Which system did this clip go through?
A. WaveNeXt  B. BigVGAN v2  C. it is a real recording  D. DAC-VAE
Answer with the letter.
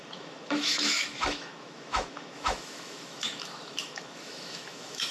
D